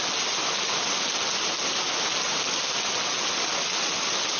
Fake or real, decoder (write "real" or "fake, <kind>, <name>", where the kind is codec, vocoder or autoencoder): real